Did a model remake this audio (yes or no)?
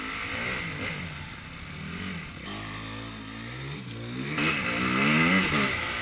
no